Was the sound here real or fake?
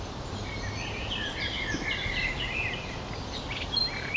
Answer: real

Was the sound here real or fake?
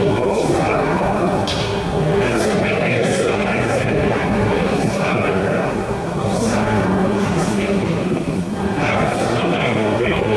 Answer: fake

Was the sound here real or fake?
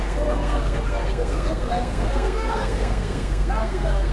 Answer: fake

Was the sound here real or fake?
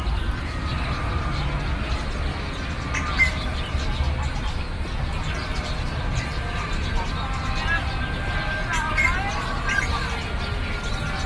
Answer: real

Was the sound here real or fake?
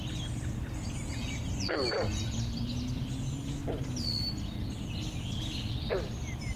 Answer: real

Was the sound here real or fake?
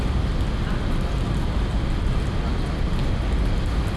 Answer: real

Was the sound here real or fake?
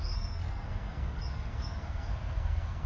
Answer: fake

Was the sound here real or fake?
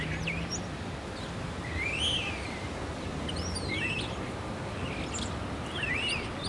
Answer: real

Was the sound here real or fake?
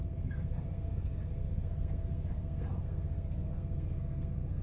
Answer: fake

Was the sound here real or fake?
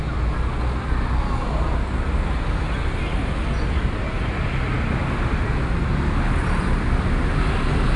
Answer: real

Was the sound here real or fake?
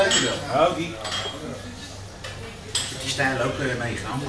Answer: real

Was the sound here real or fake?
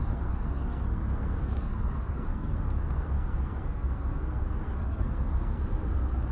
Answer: fake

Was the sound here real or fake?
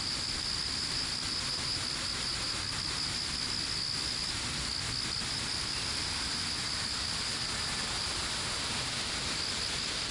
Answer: real